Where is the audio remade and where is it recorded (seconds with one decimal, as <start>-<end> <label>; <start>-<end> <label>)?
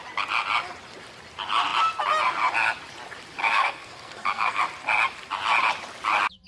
0.0-3.4 recorded; 3.4-4.6 remade; 4.6-6.5 recorded